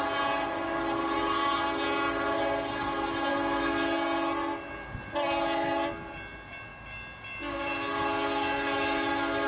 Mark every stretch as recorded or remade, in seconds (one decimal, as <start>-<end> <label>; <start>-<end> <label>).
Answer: 0.0-9.5 recorded